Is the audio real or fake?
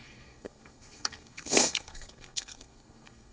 fake